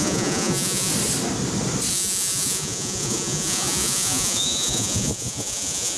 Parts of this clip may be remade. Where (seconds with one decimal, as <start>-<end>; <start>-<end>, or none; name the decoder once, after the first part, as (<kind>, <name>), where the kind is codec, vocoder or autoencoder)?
0.0-0.9 (vocoder, Vocos); 1.9-6.0